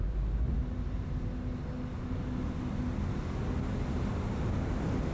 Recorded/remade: recorded